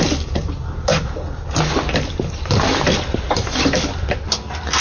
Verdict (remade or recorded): recorded